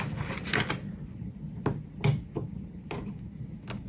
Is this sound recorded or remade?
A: recorded